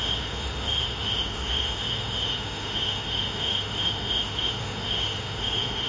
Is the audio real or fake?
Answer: fake